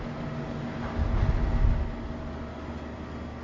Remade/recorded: recorded